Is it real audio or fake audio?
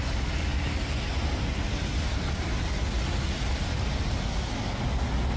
real